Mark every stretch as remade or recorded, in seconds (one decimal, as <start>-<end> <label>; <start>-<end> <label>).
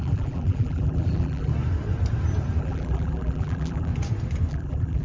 0.0-1.5 remade; 1.5-2.6 recorded; 2.6-3.9 remade; 3.9-4.5 recorded; 4.5-5.0 remade